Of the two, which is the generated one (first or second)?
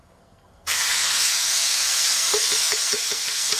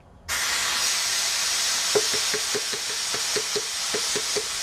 first